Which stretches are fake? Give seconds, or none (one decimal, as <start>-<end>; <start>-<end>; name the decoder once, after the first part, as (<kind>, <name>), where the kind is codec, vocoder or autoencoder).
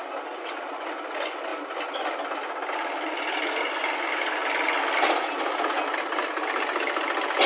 none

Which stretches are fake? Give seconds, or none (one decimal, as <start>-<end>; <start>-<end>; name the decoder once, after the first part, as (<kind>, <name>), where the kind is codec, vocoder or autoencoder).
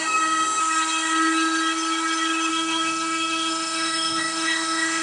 0.0-0.6 (autoencoder, DAC-VAE); 2.5-5.0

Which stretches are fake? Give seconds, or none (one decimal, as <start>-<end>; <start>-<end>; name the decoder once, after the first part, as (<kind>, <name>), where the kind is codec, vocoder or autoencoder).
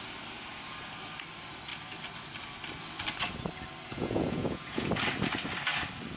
3.9-4.9 (vocoder, Vocos)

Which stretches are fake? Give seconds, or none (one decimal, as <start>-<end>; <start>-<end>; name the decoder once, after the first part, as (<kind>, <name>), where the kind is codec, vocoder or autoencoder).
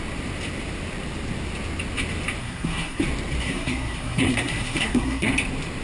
2.4-3.0 (codec, SNAC); 3.4-5.3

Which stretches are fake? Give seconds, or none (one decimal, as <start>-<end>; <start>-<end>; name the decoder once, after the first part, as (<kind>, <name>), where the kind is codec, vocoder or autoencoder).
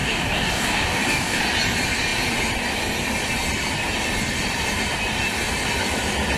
0.0-1.4 (codec, DAC)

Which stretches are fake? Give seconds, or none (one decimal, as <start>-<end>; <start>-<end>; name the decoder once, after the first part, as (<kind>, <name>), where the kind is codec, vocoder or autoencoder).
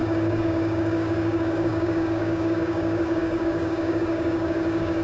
0.0-5.0 (codec, DAC)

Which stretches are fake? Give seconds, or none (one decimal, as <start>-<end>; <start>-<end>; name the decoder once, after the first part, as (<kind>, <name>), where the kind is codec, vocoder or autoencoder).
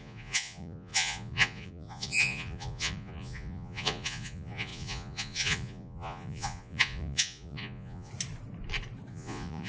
0.0-8.1 (vocoder, Vocos); 9.1-9.7